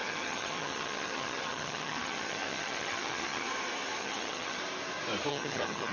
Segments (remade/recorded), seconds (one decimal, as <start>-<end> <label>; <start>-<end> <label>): 0.0-3.5 remade; 3.5-4.0 recorded; 4.0-4.6 remade; 4.6-5.3 recorded; 5.3-5.9 remade